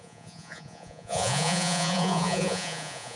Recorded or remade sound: remade